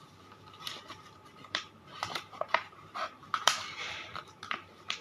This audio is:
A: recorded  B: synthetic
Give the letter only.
B